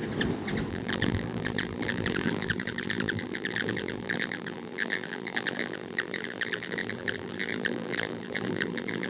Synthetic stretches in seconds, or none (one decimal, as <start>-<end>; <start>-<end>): 0.7-9.1